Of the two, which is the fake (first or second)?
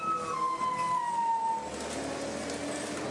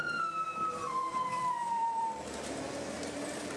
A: second